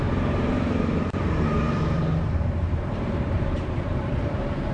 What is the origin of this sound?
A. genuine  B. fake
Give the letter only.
B